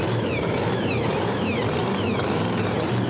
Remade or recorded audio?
remade